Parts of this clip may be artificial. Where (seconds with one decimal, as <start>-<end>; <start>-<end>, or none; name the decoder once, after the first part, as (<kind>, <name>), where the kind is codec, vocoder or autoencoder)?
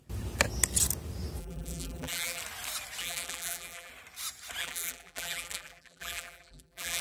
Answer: 1.4-2.4 (vocoder, BigVGAN v2); 3.0-3.9; 4.6-7.0